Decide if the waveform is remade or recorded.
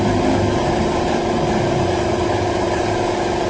recorded